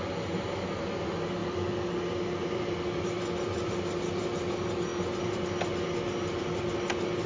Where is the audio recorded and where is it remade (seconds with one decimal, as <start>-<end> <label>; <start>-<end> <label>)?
0.0-7.3 recorded